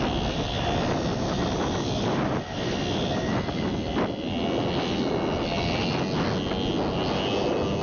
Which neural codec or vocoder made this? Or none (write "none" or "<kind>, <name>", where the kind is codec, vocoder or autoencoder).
none